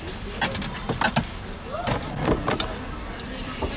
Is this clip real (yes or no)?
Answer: yes